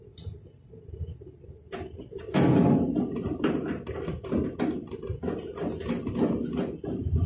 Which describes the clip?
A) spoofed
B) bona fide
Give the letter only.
B